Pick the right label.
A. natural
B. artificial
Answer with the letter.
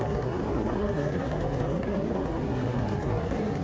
B